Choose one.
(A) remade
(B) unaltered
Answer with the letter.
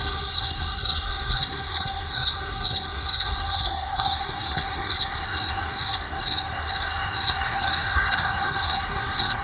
A